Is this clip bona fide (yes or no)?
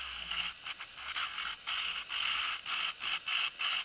yes